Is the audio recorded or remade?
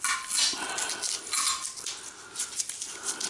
recorded